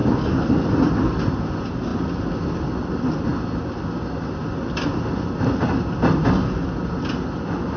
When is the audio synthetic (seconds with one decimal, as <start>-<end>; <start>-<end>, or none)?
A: none